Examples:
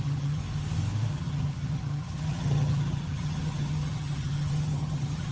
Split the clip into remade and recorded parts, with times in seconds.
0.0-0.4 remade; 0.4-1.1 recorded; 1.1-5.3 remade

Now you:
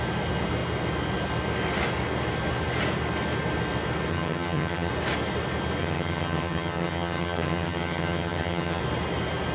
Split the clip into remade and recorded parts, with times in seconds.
0.0-4.1 recorded; 4.1-4.9 remade; 4.9-5.8 recorded; 5.8-8.8 remade; 8.8-9.5 recorded

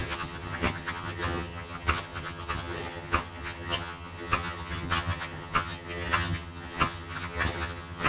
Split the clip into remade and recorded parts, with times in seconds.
0.0-8.1 remade

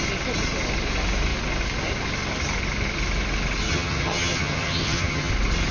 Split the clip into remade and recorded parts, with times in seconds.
0.0-3.7 recorded; 3.7-5.3 remade; 5.3-5.7 recorded

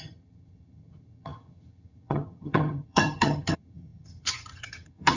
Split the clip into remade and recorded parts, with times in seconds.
0.0-5.2 remade

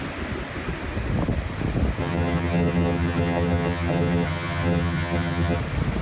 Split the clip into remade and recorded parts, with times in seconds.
0.0-2.0 recorded; 2.0-5.6 remade; 5.6-6.0 recorded

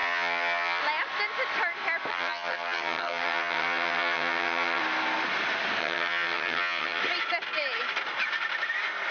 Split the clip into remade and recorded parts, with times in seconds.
0.0-0.8 remade; 0.8-2.1 recorded; 2.1-4.8 remade; 4.8-5.8 recorded; 5.8-7.0 remade; 7.0-9.1 recorded

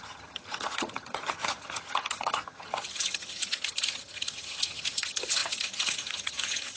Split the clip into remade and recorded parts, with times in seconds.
0.0-6.8 remade